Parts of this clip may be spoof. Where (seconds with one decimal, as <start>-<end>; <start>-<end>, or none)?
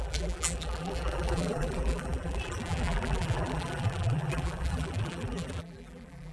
0.0-6.3